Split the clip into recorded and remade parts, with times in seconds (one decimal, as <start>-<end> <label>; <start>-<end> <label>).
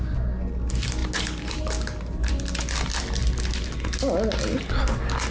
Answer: 0.0-1.0 recorded; 1.0-2.3 remade; 2.3-5.3 recorded